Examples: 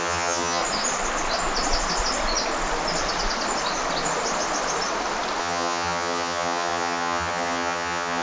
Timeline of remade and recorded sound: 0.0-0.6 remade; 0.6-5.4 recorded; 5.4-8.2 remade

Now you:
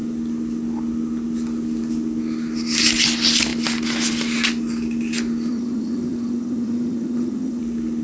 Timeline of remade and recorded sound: 0.0-5.5 recorded; 5.5-7.6 remade; 7.6-8.0 recorded

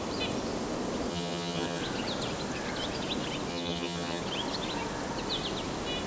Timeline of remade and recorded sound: 0.0-1.1 recorded; 1.1-1.8 remade; 1.8-3.5 recorded; 3.5-4.2 remade; 4.2-6.1 recorded

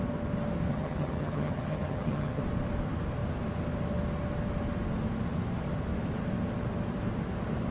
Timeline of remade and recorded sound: 0.0-0.7 recorded; 0.7-2.4 remade; 2.4-7.7 recorded

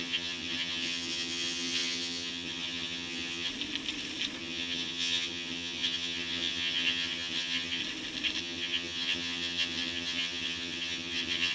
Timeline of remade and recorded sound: 0.0-3.5 remade; 3.5-4.4 recorded; 4.4-7.8 remade; 7.8-8.4 recorded; 8.4-11.5 remade